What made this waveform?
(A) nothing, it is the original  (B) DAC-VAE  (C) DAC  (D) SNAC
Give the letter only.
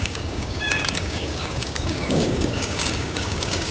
C